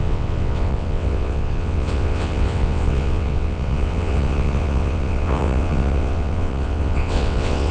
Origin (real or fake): fake